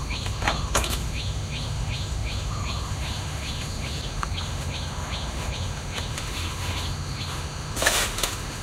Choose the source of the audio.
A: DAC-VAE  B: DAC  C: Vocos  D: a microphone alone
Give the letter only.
A